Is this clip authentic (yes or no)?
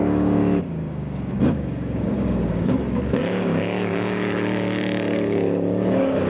no